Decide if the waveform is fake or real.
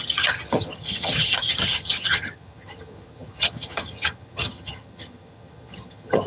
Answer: fake